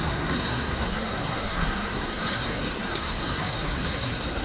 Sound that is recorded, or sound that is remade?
remade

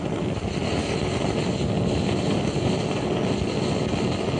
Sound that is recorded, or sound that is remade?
recorded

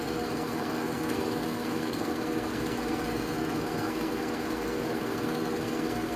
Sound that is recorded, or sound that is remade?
remade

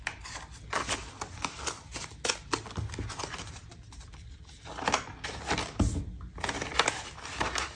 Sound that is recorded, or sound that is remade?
recorded